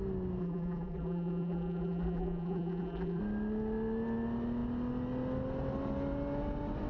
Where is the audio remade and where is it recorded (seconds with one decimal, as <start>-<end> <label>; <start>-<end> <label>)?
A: 0.0-0.4 recorded; 0.4-3.2 remade; 3.2-6.9 recorded